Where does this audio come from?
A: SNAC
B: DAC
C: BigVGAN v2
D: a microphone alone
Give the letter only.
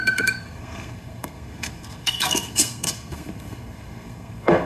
A